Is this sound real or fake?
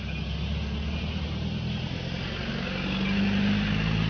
real